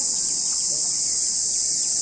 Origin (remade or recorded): recorded